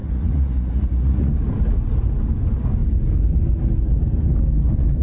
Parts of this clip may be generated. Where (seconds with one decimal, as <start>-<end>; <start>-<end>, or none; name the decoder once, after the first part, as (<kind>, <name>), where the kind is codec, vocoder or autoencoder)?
0.0-1.3 (vocoder, Vocos)